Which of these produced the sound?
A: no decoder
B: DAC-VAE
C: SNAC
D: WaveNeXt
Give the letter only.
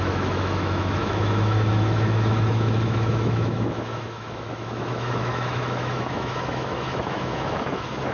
B